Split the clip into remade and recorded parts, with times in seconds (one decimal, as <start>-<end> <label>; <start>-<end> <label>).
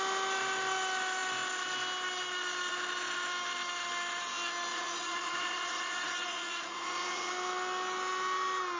0.0-4.7 recorded; 4.7-7.3 remade; 7.3-8.8 recorded